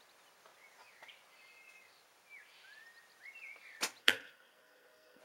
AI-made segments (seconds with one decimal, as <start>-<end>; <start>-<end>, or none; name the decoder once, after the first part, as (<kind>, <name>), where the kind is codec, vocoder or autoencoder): 4.0-5.2 (codec, SNAC)